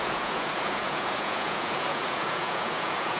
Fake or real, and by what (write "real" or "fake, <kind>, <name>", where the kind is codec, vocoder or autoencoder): fake, vocoder, Vocos